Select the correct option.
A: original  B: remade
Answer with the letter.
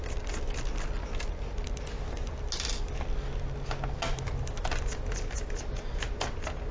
A